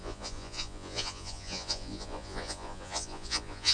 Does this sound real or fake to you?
fake